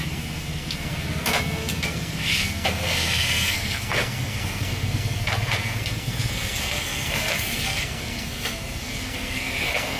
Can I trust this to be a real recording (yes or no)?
no